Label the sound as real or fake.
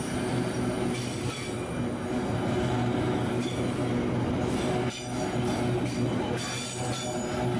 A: real